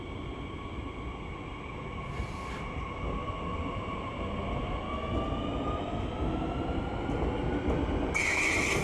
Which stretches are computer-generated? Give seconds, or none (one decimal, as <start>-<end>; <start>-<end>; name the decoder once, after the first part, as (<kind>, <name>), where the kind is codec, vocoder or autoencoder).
none